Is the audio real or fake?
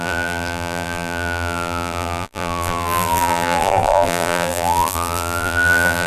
fake